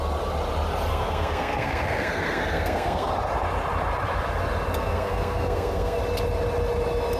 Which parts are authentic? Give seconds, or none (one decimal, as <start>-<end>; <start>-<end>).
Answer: 0.0-0.9; 3.1-4.8; 6.0-7.2